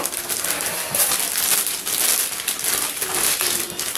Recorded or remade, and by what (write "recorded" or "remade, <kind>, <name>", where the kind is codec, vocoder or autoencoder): recorded